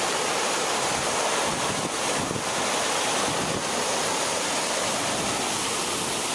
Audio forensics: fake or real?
real